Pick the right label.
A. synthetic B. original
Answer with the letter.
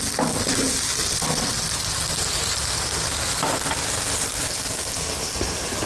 B